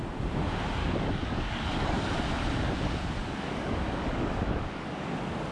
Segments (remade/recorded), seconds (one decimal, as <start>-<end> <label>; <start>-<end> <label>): 0.0-0.8 recorded; 0.8-2.1 remade; 2.1-3.2 recorded; 3.2-5.0 remade; 5.0-5.5 recorded

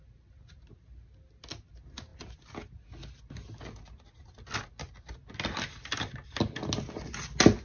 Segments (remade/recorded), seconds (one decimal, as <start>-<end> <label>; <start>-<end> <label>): 0.0-7.6 recorded

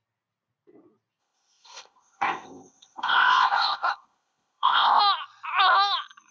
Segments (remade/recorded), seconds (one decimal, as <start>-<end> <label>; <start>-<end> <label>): 0.0-1.2 recorded; 1.2-5.0 remade; 5.0-6.3 recorded

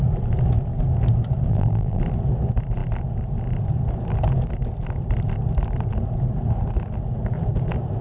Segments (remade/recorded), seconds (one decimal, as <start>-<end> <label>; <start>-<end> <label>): 0.0-1.5 recorded; 1.5-2.0 remade; 2.0-8.0 recorded